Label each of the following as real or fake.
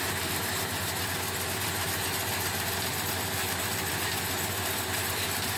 real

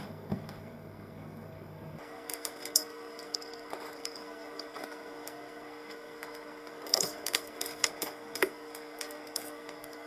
fake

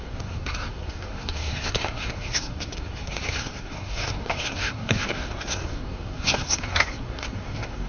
fake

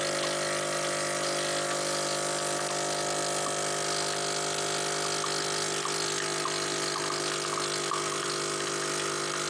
real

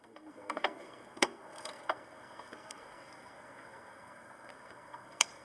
fake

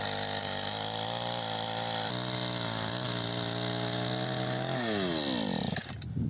real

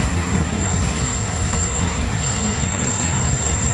fake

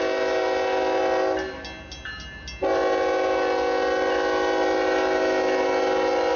real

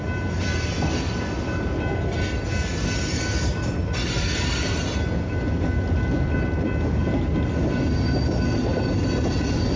real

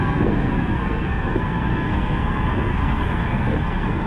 fake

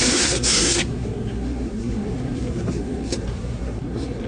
fake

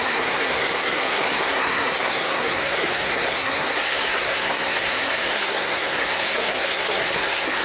fake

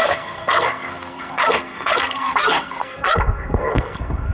fake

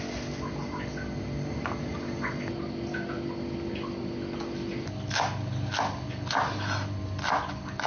real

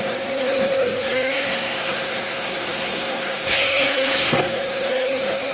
fake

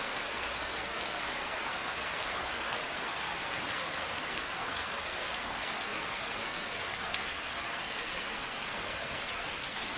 fake